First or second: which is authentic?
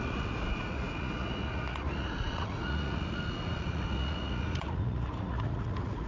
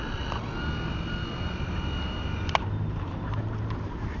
second